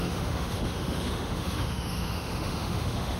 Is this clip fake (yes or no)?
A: yes